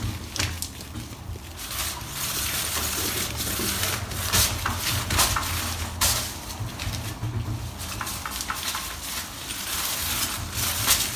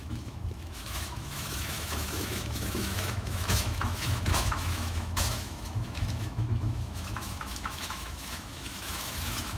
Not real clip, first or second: second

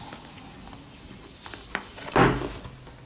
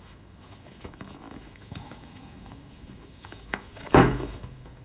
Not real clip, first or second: second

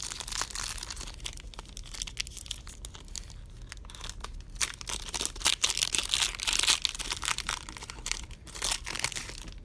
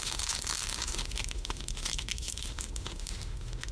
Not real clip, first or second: second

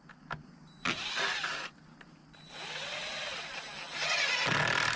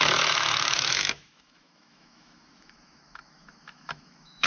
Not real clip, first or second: second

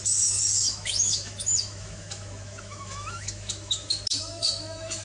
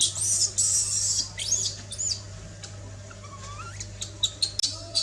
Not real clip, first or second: first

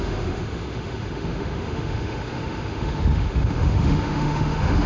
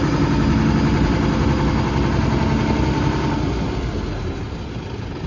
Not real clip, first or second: first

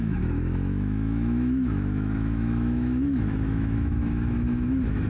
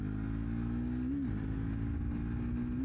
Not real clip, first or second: first